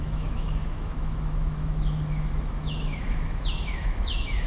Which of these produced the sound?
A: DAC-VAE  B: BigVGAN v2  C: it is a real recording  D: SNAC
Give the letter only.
A